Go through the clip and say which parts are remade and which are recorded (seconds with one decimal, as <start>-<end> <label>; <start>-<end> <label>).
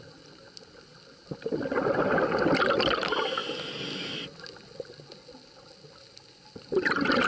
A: 0.0-7.3 recorded